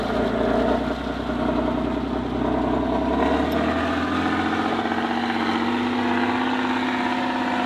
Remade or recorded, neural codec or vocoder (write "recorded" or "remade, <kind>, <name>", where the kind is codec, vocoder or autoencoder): recorded